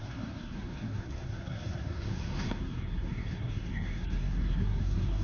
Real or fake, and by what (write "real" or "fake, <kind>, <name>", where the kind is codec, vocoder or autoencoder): fake, codec, SNAC